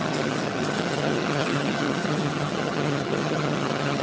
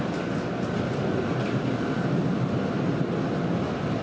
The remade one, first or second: first